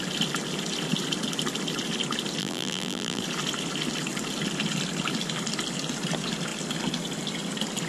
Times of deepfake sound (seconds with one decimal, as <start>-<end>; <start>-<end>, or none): 2.4-3.2